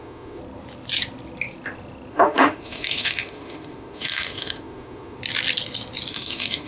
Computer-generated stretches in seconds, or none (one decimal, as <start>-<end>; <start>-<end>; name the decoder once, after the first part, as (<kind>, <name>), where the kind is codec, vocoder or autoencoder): 0.0-0.4 (autoencoder, DAC-VAE); 2.1-5.2; 6.1-6.7